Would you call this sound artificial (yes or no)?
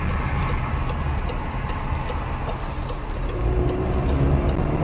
no